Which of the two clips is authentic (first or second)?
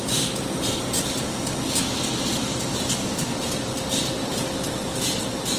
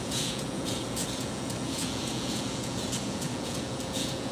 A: first